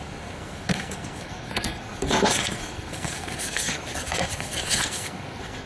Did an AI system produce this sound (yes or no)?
yes